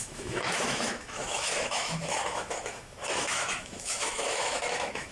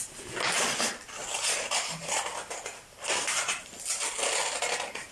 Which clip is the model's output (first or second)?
first